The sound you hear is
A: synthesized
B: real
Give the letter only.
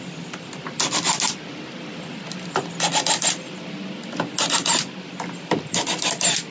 B